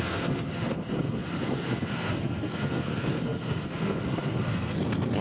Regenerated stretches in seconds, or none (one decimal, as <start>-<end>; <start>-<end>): 0.0-5.2